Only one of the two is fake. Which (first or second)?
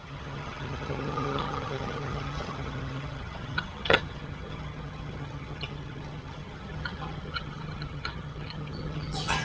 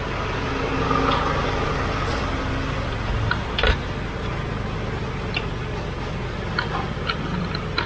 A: first